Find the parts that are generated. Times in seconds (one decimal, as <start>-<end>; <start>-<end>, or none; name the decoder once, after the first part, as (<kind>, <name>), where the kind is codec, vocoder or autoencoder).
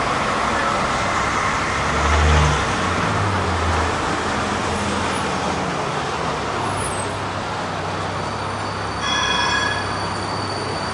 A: none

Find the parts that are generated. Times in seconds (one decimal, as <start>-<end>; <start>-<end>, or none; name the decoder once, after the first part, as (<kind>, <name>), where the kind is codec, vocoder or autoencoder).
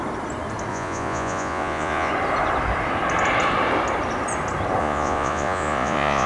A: 0.7-2.1 (vocoder, Vocos); 4.8-6.3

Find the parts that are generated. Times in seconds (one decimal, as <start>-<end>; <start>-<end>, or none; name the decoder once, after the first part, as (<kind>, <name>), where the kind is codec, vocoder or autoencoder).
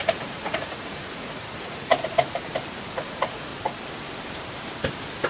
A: 0.0-1.9 (vocoder, Vocos); 2.7-3.5